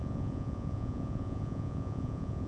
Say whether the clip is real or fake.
fake